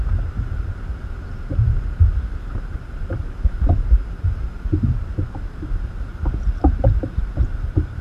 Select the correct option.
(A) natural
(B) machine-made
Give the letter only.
B